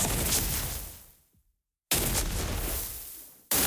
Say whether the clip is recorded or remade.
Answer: recorded